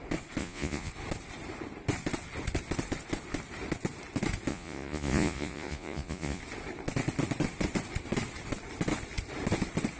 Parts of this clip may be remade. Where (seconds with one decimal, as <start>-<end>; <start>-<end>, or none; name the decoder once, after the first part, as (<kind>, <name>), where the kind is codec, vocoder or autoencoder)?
0.4-0.9 (vocoder, Vocos); 4.5-6.4